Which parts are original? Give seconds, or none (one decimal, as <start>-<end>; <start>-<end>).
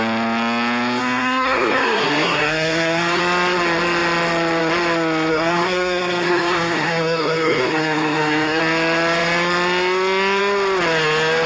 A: 0.0-1.0; 3.2-5.3; 8.6-11.5